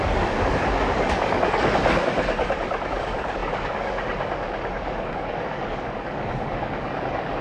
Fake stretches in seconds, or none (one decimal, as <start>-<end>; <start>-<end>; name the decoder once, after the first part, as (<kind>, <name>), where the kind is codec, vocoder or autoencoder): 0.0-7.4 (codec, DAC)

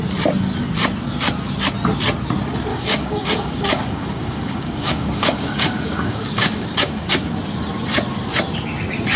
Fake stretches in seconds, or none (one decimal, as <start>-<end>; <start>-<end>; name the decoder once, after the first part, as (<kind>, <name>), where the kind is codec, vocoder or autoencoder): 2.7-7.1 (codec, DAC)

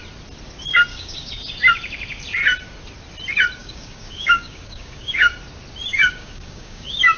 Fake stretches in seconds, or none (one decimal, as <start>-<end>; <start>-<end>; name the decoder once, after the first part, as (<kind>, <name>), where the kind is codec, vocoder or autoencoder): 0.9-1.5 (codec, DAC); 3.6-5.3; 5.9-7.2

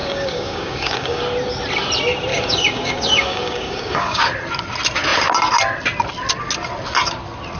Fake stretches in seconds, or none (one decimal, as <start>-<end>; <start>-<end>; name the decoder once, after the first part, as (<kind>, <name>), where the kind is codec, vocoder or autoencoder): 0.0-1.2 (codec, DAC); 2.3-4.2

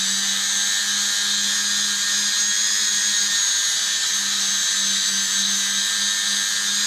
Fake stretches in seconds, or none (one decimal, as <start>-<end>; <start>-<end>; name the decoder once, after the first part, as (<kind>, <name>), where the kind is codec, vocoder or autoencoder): none